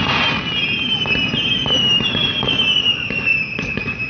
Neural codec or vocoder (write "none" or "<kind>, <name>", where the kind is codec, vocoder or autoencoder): none